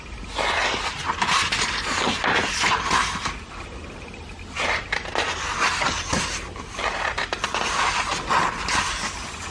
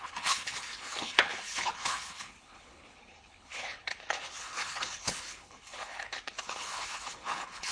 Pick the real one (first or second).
first